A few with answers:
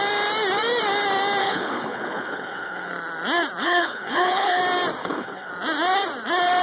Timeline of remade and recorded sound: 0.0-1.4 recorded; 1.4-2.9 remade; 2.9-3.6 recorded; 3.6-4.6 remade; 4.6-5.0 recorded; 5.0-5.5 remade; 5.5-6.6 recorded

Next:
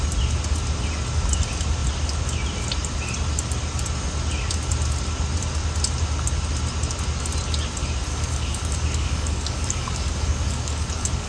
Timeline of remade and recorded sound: 0.0-8.1 recorded; 8.1-11.3 remade

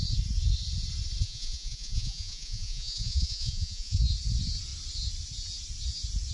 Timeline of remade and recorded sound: 0.0-1.2 recorded; 1.2-4.0 remade; 4.0-6.3 recorded

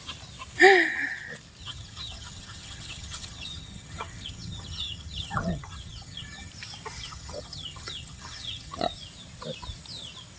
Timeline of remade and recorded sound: 0.0-1.6 recorded; 1.6-6.5 remade; 6.5-6.9 recorded; 6.9-8.8 remade; 8.8-10.4 recorded